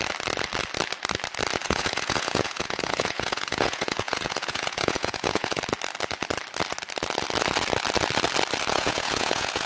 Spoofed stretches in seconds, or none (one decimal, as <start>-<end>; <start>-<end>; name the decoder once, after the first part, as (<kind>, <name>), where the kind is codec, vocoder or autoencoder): 1.6-5.6 (vocoder, Vocos); 8.7-9.7